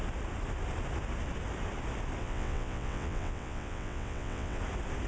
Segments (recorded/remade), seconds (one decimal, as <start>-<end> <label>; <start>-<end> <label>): 0.0-2.2 recorded; 2.2-4.6 remade; 4.6-5.1 recorded